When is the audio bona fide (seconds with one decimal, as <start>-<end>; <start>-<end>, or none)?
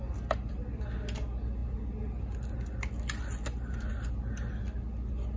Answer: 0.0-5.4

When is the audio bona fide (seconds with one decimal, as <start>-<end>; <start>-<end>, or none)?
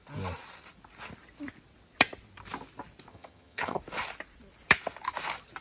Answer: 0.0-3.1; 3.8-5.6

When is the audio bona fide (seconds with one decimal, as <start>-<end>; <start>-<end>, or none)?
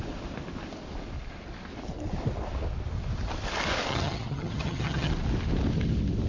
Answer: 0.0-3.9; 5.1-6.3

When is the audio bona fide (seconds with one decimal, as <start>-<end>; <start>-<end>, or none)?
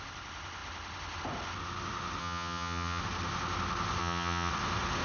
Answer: 0.0-2.2; 3.0-4.0; 4.5-5.0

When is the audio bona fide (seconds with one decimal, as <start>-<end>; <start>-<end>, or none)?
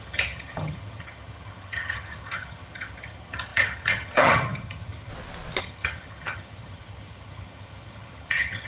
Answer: 5.1-5.6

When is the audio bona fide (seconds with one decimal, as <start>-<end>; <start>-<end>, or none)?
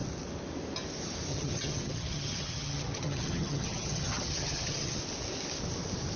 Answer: 0.0-1.3; 5.0-6.2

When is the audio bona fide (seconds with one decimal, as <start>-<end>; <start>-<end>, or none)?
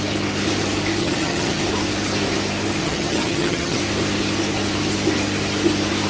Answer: 0.0-1.0; 1.6-2.8; 3.8-6.1